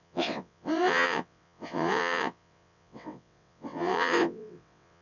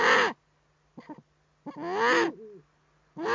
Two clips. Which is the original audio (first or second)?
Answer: second